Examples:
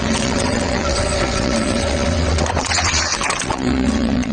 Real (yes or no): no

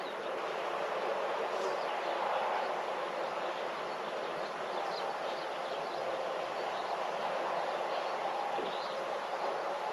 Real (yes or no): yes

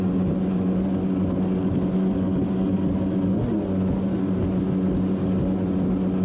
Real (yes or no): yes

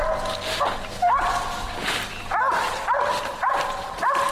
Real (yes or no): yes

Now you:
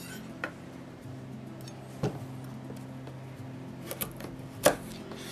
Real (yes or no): yes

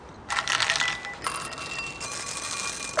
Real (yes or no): yes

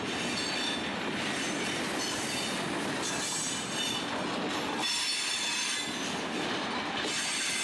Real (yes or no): yes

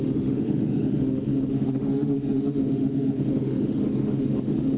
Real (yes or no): no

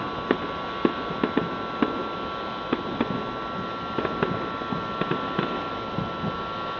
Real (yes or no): yes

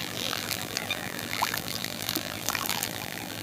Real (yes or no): no